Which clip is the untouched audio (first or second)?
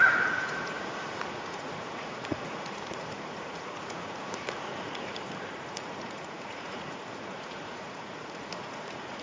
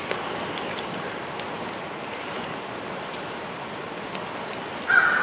second